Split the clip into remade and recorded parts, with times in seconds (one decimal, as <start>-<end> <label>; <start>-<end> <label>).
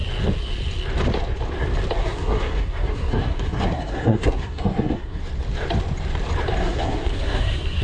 0.0-2.0 recorded; 2.0-5.2 remade; 5.2-6.6 recorded; 6.6-7.8 remade